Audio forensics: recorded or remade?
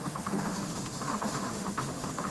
remade